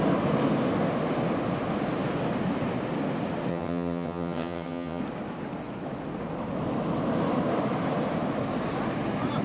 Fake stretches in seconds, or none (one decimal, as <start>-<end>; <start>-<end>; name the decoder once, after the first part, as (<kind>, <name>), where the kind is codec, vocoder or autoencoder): 3.5-5.0 (vocoder, HiFi-GAN)